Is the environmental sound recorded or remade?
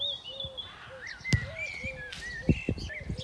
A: recorded